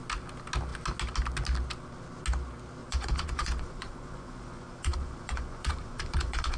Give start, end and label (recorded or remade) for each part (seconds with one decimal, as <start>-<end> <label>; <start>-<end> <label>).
0.0-2.8 recorded; 2.8-6.6 remade